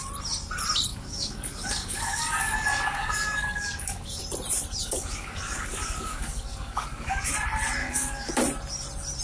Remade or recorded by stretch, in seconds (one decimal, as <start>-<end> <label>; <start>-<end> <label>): 0.0-0.9 recorded; 0.9-4.2 remade; 4.2-4.8 recorded; 4.8-7.3 remade; 7.3-7.8 recorded; 7.8-8.3 remade; 8.3-9.2 recorded